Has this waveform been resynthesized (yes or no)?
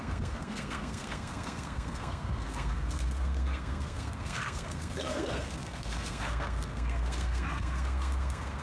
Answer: yes